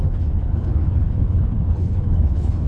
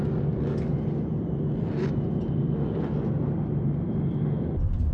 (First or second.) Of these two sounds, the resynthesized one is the first